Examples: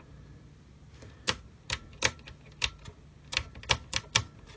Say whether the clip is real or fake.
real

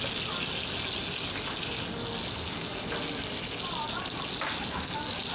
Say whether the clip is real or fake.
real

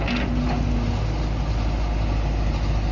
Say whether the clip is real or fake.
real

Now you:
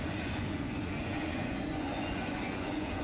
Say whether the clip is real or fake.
fake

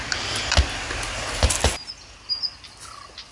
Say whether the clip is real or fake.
real